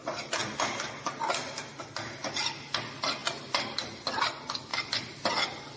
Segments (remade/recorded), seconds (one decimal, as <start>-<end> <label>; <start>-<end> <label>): 0.0-1.7 remade; 1.7-3.2 recorded; 3.2-4.2 remade; 4.2-4.7 recorded; 4.7-5.3 remade; 5.3-5.8 recorded